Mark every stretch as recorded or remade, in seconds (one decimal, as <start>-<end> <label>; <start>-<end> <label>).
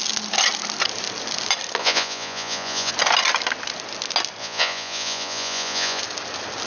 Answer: 0.0-1.8 recorded; 1.8-2.9 remade; 2.9-4.4 recorded; 4.4-6.0 remade; 6.0-6.7 recorded